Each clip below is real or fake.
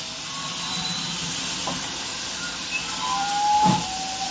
fake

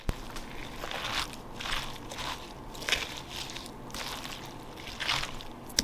real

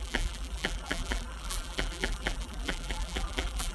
fake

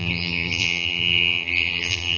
fake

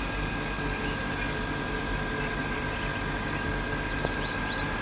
real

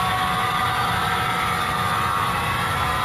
real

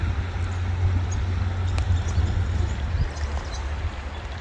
real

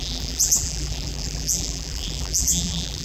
fake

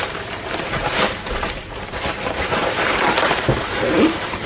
fake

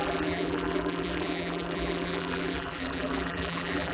fake